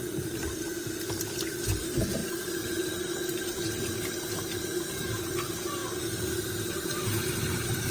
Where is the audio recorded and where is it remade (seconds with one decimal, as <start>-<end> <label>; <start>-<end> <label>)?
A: 0.0-0.7 remade; 0.7-1.4 recorded; 1.4-5.8 remade; 5.8-6.5 recorded; 6.5-7.9 remade